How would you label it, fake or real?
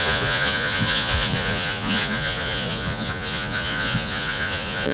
fake